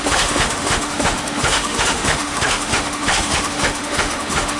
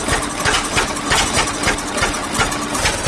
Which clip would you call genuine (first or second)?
second